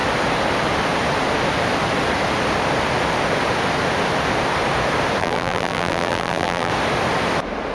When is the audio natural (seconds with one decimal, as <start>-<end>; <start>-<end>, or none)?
0.0-5.2; 6.7-7.7